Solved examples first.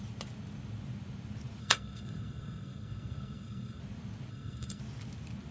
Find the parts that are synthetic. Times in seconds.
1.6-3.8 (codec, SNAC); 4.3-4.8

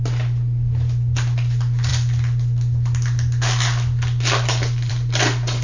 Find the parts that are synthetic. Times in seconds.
none

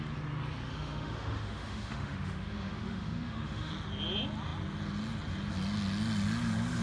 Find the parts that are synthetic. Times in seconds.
0.7-3.7 (autoencoder, DAC-VAE)